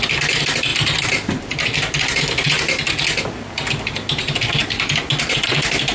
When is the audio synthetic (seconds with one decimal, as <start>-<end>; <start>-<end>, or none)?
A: none